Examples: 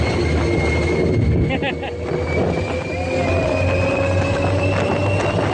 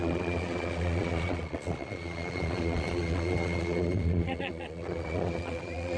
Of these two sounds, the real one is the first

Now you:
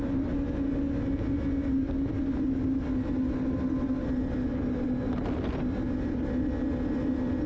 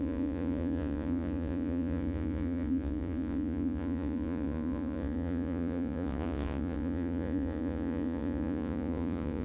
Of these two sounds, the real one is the first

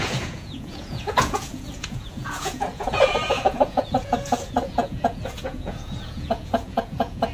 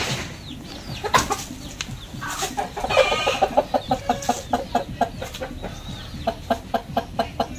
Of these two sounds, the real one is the second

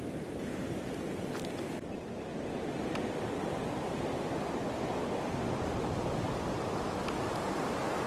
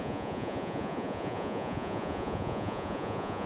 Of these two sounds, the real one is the first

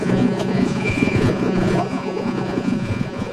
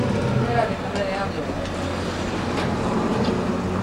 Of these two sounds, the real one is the second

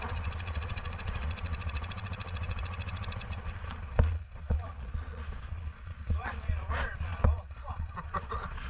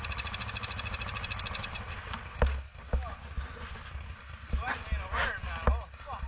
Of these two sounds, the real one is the second